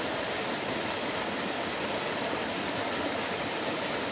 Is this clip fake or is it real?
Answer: real